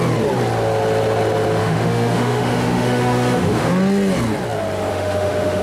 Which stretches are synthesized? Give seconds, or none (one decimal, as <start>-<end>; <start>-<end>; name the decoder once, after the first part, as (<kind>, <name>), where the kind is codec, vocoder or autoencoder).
1.6-3.7 (autoencoder, DAC-VAE); 4.9-5.6